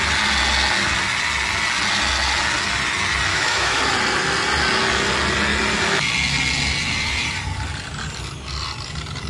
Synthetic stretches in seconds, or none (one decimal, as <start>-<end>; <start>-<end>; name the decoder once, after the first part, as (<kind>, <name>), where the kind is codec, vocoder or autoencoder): 3.3-3.8 (autoencoder, DAC-VAE)